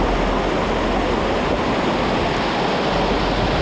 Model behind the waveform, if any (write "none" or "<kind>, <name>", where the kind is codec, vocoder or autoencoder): none